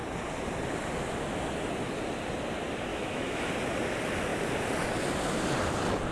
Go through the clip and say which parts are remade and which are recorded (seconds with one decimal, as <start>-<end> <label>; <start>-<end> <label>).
0.0-2.9 recorded; 2.9-3.5 remade; 3.5-6.1 recorded

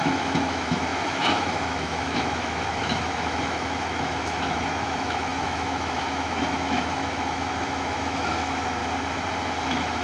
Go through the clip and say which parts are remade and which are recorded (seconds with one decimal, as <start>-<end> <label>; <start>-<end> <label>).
0.0-8.8 remade; 8.8-9.5 recorded; 9.5-10.0 remade

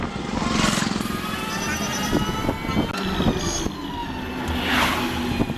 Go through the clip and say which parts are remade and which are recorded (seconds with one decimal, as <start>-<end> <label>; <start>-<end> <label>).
0.0-5.6 recorded

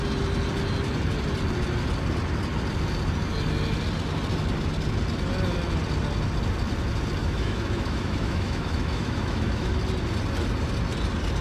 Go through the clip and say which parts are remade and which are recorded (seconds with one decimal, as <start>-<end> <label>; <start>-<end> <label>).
0.0-7.2 recorded; 7.2-9.7 remade; 9.7-11.4 recorded

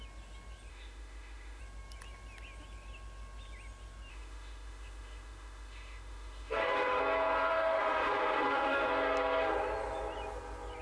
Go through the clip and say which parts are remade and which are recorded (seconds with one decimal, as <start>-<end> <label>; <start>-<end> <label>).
0.0-0.7 recorded; 0.7-1.6 remade; 1.6-4.1 recorded; 4.1-7.0 remade; 7.0-7.5 recorded; 7.5-8.9 remade; 8.9-10.8 recorded

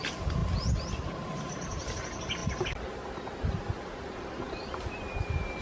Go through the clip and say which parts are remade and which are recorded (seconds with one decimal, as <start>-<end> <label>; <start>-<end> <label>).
0.0-5.6 recorded